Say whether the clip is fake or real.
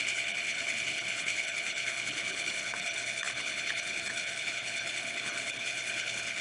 fake